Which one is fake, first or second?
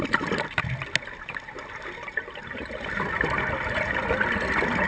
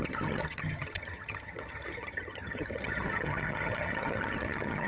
second